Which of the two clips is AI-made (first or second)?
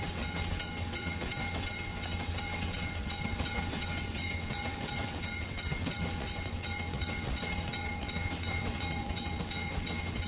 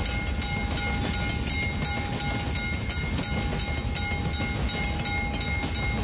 first